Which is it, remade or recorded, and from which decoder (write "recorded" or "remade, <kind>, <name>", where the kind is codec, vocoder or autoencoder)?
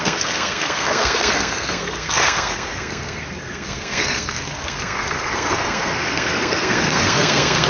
remade, codec, SNAC